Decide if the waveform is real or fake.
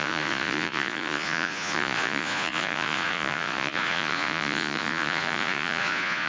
fake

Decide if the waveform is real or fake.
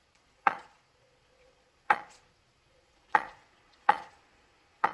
fake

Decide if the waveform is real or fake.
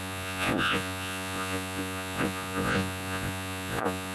fake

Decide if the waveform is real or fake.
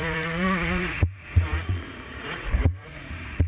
fake